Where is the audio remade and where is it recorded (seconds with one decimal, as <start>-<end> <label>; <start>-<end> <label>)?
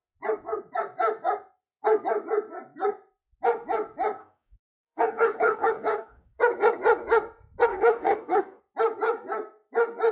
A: 0.0-4.2 recorded; 4.2-6.4 remade; 6.4-7.7 recorded; 7.7-8.6 remade; 8.6-10.1 recorded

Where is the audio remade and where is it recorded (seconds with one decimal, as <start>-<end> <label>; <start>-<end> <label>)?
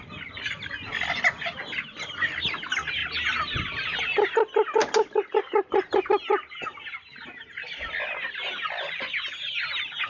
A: 0.0-10.1 recorded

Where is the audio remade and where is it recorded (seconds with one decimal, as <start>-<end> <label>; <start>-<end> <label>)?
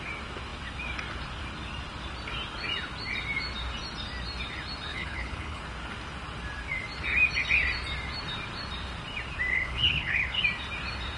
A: 0.0-4.9 recorded; 4.9-5.6 remade; 5.6-9.5 recorded; 9.5-10.4 remade; 10.4-11.2 recorded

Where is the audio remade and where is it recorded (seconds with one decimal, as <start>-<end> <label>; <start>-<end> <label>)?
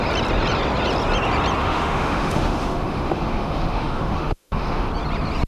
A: 0.0-1.6 recorded; 1.6-4.9 remade; 4.9-5.5 recorded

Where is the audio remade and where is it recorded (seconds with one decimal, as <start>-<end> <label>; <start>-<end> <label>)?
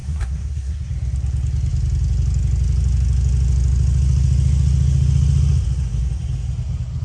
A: 0.0-0.9 remade; 0.9-7.0 recorded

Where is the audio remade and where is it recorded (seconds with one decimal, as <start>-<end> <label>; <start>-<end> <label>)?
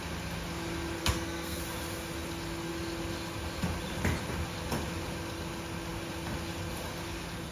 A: 0.0-1.0 recorded; 1.0-1.6 remade; 1.6-7.5 recorded